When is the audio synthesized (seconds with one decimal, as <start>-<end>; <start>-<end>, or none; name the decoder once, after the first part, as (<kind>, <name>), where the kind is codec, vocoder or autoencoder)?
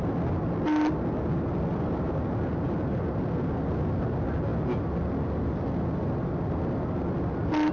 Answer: none